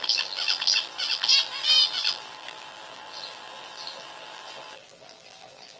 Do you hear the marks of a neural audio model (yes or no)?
yes